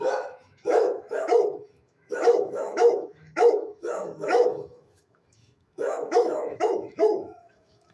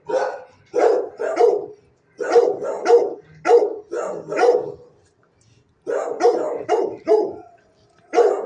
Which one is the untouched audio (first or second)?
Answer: second